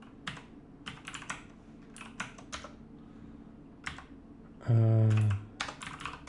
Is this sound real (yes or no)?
yes